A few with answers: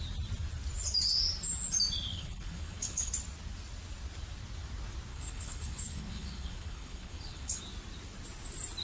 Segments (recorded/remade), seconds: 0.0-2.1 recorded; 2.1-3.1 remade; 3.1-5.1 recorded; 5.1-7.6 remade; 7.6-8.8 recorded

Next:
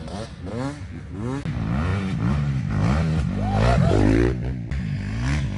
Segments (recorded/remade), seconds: 0.0-5.6 recorded

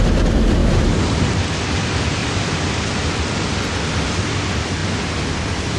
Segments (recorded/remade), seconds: 0.0-0.6 recorded; 0.6-1.2 remade; 1.2-2.2 recorded; 2.2-3.6 remade; 3.6-5.8 recorded

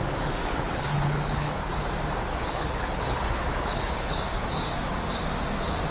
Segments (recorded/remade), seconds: 0.0-0.4 recorded; 0.4-1.7 remade; 1.7-2.3 recorded; 2.3-4.2 remade; 4.2-5.9 recorded

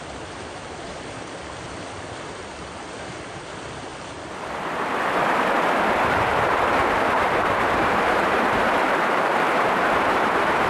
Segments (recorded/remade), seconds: 0.0-6.3 recorded; 6.3-10.7 remade

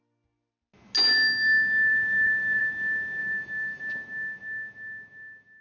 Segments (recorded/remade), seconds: 0.0-1.9 recorded; 1.9-2.7 remade; 2.7-3.2 recorded; 3.2-3.8 remade; 3.8-5.6 recorded

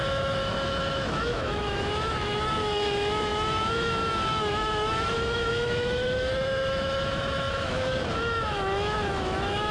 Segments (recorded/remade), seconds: 0.0-9.7 remade